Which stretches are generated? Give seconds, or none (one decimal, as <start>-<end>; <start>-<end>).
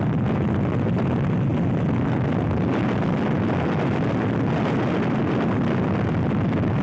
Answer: none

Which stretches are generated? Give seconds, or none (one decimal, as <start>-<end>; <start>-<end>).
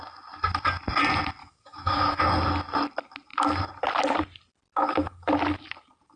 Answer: 1.4-2.2; 4.8-5.3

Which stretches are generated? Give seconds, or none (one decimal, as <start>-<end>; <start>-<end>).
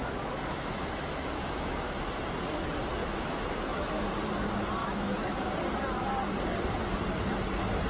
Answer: 0.0-2.1; 3.0-3.9; 4.8-5.3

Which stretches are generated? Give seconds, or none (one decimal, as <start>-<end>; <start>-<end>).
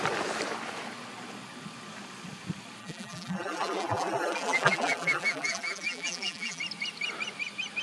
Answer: 2.8-6.6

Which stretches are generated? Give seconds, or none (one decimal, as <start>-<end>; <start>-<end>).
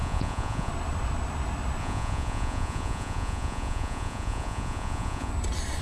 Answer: 0.0-0.7; 1.8-5.3